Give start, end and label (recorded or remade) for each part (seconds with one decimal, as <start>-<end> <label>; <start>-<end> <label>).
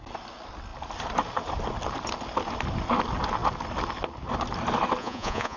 0.0-5.0 recorded; 5.0-5.6 remade